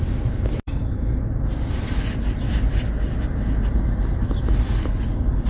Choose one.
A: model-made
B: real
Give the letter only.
B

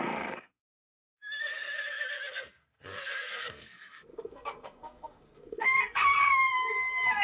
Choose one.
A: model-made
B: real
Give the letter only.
A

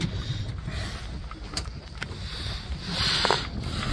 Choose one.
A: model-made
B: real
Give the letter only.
B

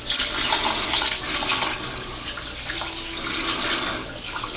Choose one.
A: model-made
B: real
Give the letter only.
B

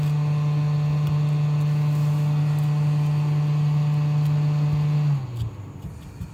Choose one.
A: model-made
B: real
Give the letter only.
B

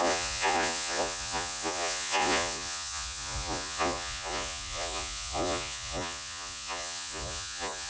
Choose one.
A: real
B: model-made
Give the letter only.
B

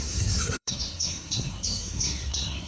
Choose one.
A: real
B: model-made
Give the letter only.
B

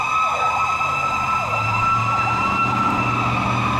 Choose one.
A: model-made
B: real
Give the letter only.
B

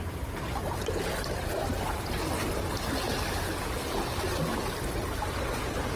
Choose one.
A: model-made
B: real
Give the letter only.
B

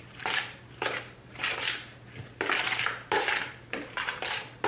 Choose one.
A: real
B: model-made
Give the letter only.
B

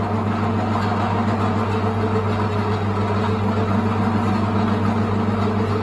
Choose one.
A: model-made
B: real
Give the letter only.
B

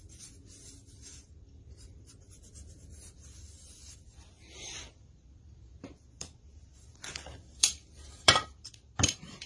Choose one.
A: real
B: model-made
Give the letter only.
B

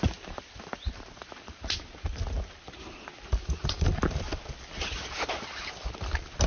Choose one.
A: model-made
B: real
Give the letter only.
B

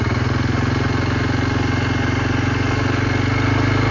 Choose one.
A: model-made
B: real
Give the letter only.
B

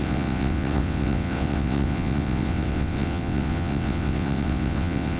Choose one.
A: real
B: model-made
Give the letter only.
B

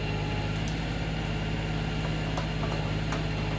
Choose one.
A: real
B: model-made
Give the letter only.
A